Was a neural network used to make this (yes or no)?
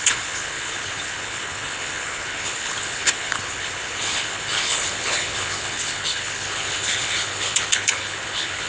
yes